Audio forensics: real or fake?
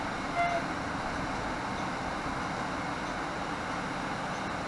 real